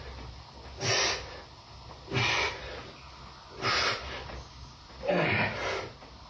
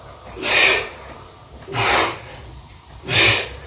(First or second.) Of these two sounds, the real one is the first